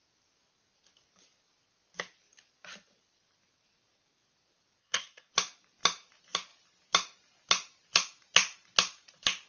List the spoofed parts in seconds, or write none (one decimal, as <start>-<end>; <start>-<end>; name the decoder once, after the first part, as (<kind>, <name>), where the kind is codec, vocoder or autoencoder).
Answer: 4.8-5.3 (codec, SNAC)